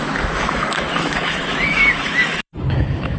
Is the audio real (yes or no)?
no